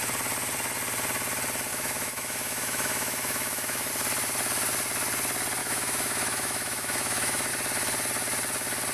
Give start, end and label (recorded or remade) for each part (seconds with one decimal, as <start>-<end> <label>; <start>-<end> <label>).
0.0-1.7 recorded; 1.7-3.9 remade; 3.9-5.6 recorded; 5.6-7.5 remade; 7.5-8.9 recorded